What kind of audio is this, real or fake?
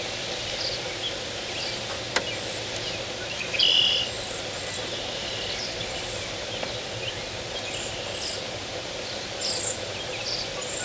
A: real